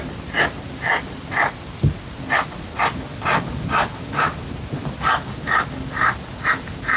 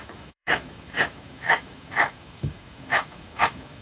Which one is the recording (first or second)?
first